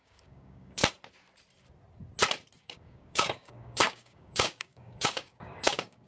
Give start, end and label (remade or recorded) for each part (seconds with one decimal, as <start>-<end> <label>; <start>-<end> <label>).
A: 0.0-0.8 remade; 0.8-2.6 recorded; 2.6-6.1 remade